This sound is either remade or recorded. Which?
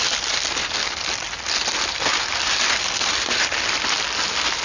recorded